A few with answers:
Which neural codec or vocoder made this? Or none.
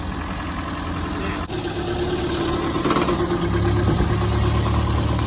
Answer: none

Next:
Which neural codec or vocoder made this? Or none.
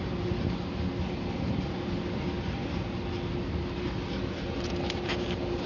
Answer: none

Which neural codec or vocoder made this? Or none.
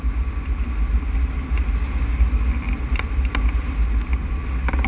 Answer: none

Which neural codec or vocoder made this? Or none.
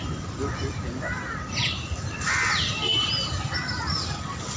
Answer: none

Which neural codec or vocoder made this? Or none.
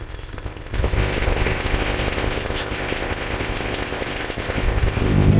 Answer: codec, ZipCodec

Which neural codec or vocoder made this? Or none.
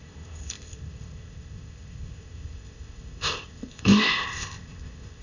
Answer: codec, ZipCodec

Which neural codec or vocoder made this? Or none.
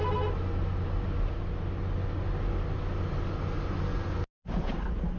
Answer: none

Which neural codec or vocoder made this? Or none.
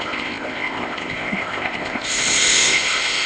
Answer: codec, ZipCodec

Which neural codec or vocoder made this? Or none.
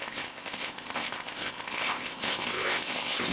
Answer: codec, ZipCodec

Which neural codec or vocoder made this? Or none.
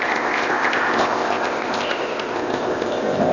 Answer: codec, ZipCodec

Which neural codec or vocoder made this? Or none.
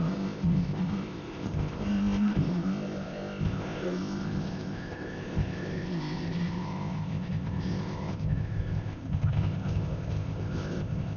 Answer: codec, ZipCodec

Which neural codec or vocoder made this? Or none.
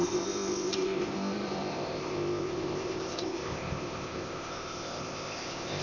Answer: codec, ZipCodec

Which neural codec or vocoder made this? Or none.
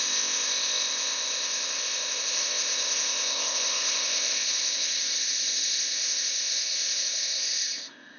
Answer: codec, ZipCodec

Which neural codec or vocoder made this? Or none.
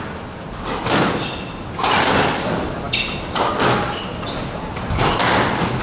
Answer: none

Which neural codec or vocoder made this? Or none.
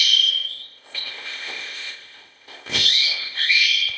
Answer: codec, ZipCodec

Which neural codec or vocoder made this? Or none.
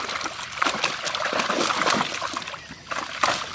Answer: none